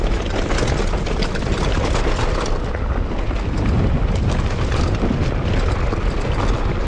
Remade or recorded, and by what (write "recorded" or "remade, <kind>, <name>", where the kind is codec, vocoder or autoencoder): recorded